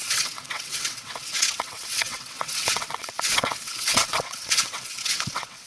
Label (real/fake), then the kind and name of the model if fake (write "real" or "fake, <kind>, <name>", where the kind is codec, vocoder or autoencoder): fake, vocoder, WaveNeXt